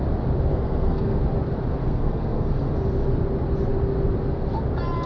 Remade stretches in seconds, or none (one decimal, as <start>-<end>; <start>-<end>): 0.5-1.2; 1.8-2.7

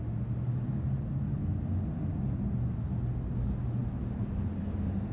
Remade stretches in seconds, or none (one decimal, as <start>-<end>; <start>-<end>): none

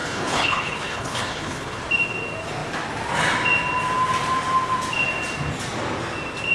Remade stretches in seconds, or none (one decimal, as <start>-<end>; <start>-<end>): 0.0-1.8

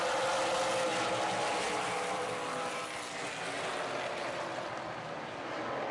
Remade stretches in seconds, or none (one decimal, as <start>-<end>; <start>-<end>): none

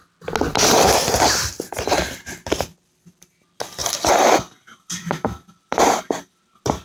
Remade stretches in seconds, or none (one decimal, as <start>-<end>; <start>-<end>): none